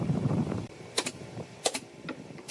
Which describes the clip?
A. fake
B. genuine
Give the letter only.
A